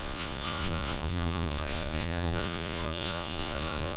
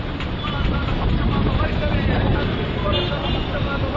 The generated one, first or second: first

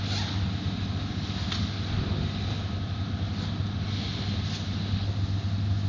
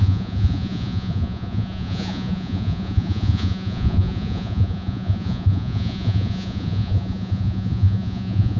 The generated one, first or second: second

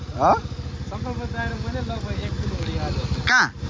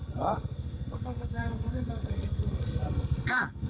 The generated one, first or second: second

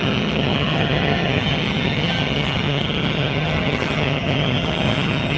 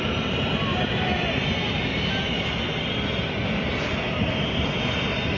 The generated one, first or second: first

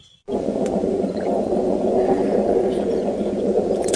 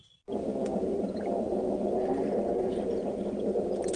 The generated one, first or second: first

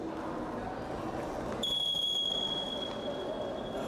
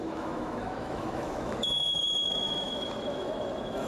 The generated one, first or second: second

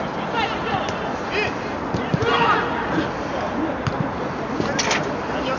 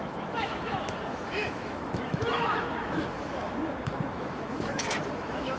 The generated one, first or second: second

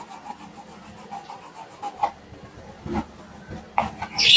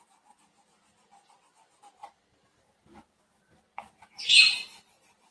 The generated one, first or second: second